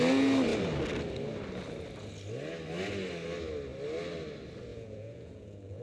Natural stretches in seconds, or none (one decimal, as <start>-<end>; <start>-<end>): 0.0-4.7